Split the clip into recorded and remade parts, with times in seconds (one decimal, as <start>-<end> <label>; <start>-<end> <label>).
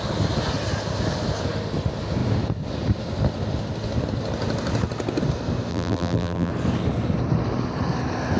0.0-5.7 recorded; 5.7-6.5 remade; 6.5-8.4 recorded